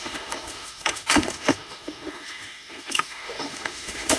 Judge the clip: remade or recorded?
remade